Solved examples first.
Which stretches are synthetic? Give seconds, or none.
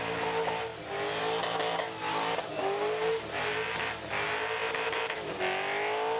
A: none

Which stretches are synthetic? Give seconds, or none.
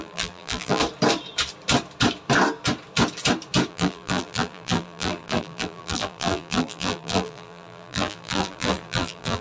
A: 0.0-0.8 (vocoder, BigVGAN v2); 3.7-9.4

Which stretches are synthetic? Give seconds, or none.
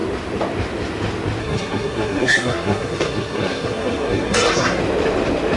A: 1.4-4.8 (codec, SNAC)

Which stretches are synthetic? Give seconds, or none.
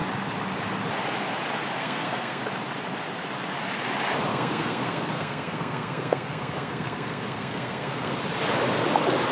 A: 1.8-2.4 (codec, SNAC); 4.3-8.1